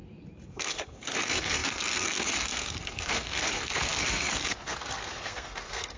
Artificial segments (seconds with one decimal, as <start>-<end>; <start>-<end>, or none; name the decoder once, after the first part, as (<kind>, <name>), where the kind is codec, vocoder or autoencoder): 0.5-6.0 (codec, SNAC)